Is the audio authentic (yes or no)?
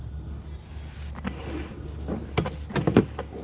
yes